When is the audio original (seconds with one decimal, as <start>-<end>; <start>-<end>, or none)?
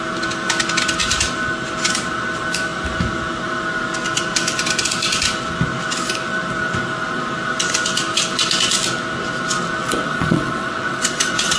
0.0-10.0